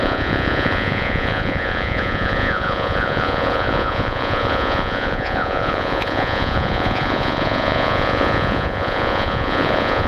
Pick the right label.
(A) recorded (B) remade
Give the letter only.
B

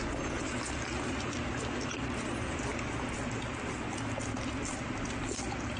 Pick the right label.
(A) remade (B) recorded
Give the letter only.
B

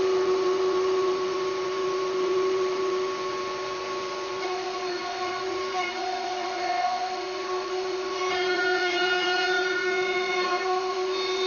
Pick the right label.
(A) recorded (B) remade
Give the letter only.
B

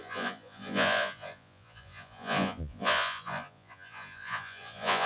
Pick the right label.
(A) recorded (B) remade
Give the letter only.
B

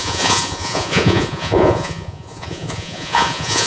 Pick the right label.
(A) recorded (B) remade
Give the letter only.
B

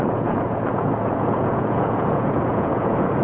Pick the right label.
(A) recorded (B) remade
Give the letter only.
B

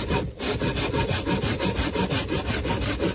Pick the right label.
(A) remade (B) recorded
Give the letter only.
B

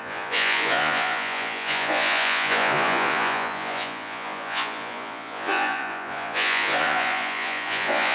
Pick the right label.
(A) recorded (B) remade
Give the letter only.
B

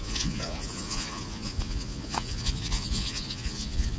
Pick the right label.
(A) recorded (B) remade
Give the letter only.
B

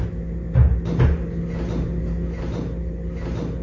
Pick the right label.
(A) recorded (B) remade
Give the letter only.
A